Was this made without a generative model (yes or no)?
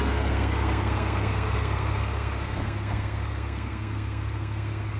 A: no